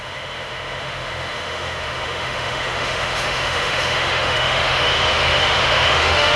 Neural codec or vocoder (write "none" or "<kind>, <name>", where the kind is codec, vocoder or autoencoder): autoencoder, DAC-VAE